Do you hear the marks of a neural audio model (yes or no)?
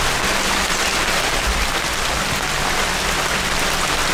no